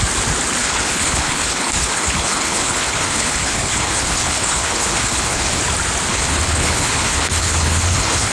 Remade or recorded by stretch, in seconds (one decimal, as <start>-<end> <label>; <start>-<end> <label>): 0.0-0.6 recorded; 0.6-5.6 remade; 5.6-6.1 recorded; 6.1-8.3 remade